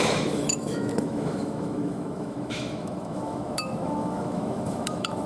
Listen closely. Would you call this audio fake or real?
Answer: fake